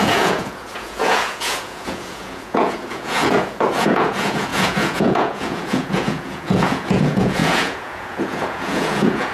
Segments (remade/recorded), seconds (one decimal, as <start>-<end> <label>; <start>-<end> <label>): 0.0-9.3 remade